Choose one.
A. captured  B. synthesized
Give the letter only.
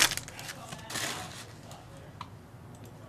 A